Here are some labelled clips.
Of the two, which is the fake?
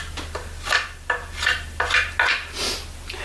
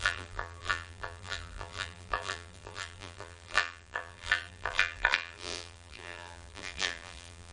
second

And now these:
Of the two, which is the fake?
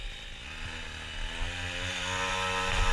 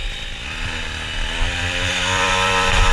second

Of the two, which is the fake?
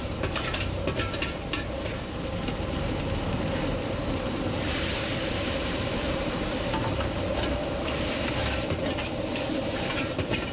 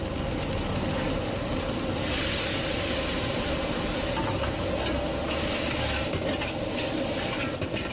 first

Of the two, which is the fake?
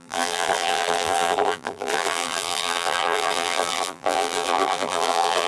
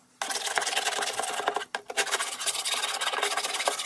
first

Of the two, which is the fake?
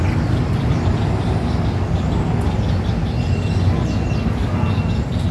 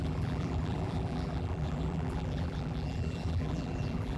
second